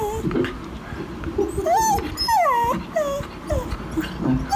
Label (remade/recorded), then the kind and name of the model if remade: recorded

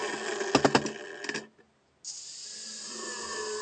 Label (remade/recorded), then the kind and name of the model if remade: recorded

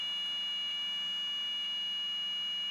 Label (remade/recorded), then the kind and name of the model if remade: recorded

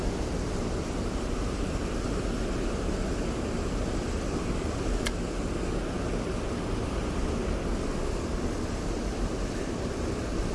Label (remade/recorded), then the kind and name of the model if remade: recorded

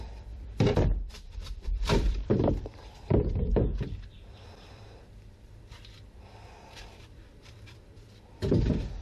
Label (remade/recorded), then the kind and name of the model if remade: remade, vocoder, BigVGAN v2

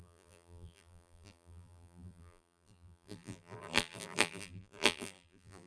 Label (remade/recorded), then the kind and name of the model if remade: remade, vocoder, BigVGAN v2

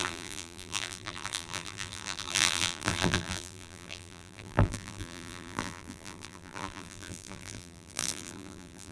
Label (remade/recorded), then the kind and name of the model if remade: remade, vocoder, BigVGAN v2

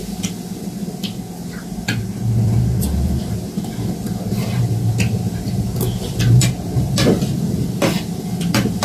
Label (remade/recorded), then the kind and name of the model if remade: recorded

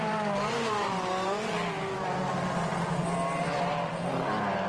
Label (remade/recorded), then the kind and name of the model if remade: remade, vocoder, BigVGAN v2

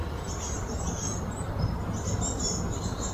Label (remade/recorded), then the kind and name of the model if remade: recorded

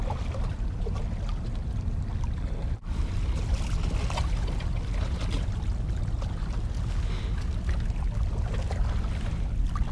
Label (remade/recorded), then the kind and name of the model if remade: recorded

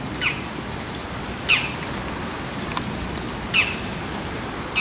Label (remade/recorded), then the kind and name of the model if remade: recorded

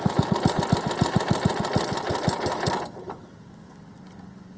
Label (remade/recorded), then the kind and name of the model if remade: recorded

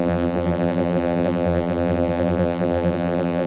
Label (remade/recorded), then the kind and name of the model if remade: remade, vocoder, BigVGAN v2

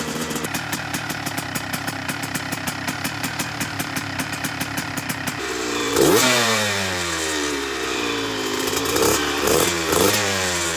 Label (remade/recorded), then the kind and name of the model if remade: remade, vocoder, BigVGAN v2